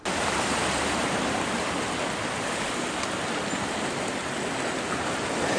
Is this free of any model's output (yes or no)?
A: yes